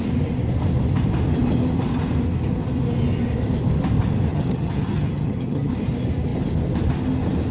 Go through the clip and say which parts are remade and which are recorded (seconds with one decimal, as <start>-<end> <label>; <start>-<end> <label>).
0.0-4.3 recorded; 4.3-5.7 remade; 5.7-7.5 recorded